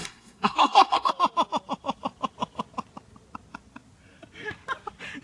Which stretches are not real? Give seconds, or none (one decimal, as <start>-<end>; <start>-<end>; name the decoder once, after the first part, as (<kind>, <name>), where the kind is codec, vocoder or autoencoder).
0.0-1.1 (codec, SNAC)